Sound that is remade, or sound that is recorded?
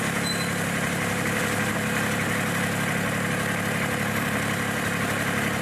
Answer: recorded